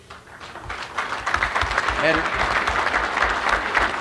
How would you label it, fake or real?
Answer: real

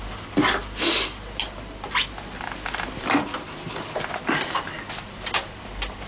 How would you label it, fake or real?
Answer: real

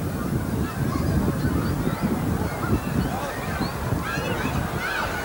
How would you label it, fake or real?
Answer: real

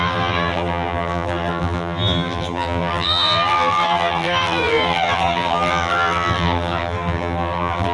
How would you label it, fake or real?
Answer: fake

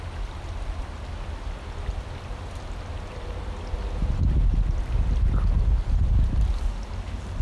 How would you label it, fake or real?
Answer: real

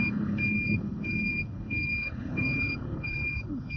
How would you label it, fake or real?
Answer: fake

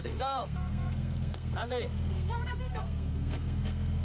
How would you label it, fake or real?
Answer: fake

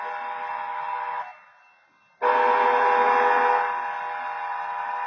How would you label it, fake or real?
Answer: real